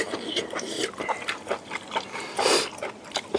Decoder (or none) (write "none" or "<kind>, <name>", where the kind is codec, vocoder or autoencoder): none